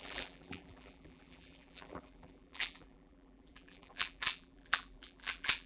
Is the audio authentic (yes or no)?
no